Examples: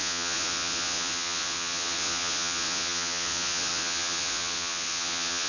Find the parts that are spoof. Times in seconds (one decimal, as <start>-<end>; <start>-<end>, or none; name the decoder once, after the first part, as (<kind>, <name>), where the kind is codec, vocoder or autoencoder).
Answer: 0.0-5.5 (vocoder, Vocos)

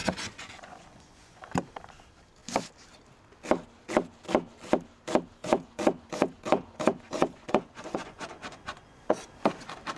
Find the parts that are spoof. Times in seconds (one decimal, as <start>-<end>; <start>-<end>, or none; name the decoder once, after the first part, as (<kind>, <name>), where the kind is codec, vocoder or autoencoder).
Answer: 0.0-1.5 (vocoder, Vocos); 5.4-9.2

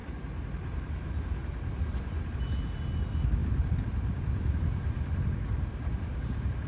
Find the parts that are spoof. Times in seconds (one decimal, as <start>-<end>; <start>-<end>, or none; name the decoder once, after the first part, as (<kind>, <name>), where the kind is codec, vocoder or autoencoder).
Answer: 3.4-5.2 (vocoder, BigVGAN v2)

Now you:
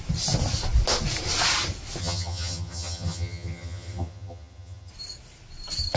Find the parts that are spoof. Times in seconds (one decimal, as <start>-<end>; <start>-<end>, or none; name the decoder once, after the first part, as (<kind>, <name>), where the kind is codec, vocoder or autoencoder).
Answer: 2.0-4.9 (vocoder, HiFi-GAN)

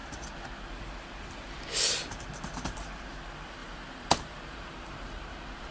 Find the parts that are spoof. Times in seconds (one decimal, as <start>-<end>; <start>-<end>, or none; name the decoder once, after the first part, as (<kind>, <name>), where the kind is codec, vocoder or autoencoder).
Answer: 3.6-5.2 (vocoder, BigVGAN v2)

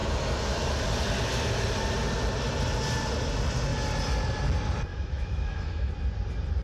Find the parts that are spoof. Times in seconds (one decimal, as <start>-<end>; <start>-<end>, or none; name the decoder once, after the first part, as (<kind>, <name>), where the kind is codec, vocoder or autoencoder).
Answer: 4.9-5.9 (autoencoder, DAC-VAE)